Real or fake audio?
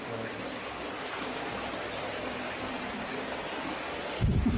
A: real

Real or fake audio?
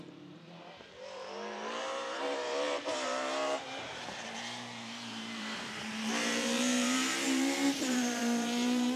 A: fake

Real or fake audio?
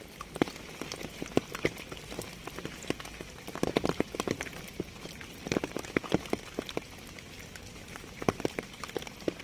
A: real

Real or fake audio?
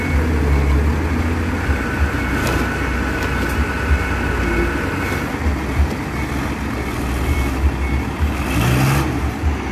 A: real